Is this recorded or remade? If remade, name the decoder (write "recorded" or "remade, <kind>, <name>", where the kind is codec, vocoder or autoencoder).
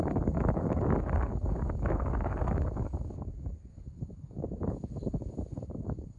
remade, codec, DAC